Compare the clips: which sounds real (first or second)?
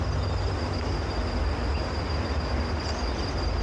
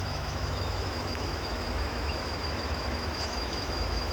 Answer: first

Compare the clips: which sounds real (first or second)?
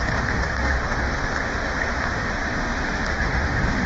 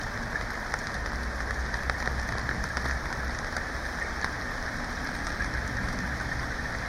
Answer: second